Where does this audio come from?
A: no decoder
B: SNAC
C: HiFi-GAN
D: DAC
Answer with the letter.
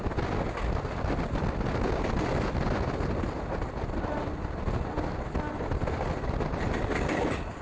A